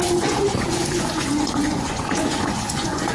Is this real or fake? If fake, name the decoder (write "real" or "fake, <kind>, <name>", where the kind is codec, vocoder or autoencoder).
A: fake, vocoder, Vocos